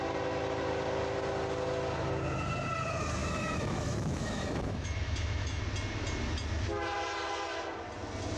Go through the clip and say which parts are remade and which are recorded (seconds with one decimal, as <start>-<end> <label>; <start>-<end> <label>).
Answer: 0.0-3.2 recorded; 3.2-5.6 remade; 5.6-8.4 recorded